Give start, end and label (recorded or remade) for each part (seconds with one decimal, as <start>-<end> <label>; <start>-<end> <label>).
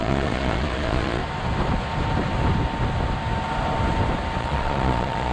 0.0-1.2 remade; 1.2-4.4 recorded; 4.4-5.3 remade